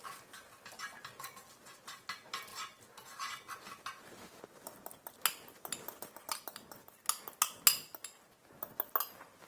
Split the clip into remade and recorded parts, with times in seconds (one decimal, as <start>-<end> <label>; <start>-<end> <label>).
0.0-9.5 recorded